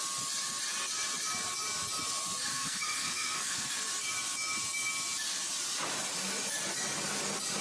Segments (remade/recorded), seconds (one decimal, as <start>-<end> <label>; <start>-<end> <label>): 0.0-2.5 recorded; 2.5-3.7 remade; 3.7-7.6 recorded